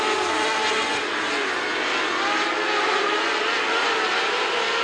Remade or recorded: recorded